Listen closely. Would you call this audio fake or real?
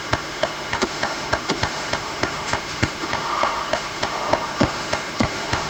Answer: fake